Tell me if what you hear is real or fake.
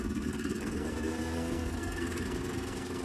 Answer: fake